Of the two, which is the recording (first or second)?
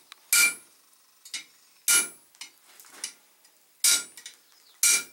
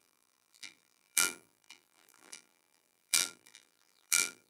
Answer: first